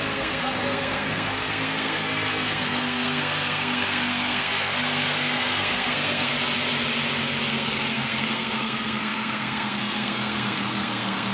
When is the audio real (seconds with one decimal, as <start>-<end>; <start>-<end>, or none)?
6.3-7.5